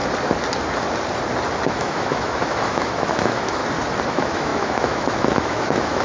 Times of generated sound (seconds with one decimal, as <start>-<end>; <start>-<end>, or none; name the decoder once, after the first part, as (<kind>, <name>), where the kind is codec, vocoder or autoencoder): 1.7-3.6 (autoencoder, DAC-VAE); 4.1-6.0